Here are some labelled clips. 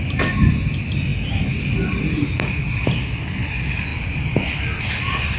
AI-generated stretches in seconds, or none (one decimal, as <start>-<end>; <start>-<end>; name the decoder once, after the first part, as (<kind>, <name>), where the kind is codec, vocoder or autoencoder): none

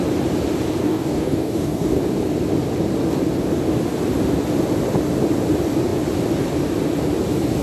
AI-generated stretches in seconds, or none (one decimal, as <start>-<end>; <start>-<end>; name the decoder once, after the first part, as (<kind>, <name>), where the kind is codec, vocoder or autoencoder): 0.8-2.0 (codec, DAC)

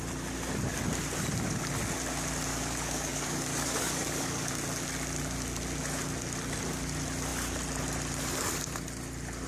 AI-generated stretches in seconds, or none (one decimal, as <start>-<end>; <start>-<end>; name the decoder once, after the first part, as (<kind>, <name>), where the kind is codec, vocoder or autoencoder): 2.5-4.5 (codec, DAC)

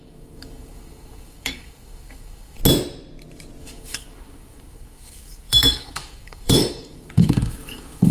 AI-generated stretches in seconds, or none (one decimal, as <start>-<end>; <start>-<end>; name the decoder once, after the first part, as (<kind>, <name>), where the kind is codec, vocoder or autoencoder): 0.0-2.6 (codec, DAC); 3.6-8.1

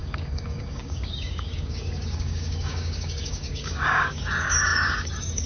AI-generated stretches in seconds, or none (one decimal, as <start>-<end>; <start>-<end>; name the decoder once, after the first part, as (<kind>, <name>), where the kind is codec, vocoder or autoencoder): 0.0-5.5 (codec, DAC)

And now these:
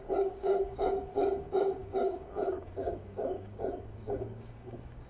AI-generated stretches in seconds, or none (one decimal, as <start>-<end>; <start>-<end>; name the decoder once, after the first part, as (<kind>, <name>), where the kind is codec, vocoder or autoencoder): 0.0-5.1 (codec, DAC)

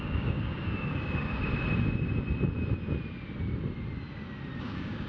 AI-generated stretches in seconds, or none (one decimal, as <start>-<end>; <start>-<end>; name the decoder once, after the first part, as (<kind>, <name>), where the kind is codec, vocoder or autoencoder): 0.0-1.5 (codec, DAC); 4.6-5.1

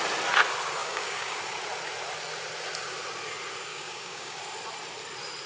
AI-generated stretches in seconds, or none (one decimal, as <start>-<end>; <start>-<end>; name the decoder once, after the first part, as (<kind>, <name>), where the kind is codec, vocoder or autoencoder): 0.8-1.4 (codec, DAC); 3.7-4.4